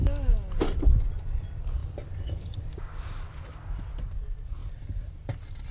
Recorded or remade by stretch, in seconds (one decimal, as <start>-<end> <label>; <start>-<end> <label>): 0.0-5.7 recorded